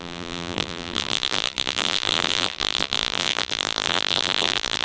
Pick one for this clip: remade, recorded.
remade